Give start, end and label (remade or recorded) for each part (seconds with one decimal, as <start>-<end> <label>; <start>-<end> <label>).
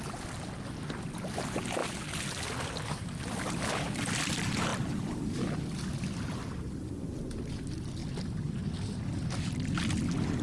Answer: 0.0-10.4 recorded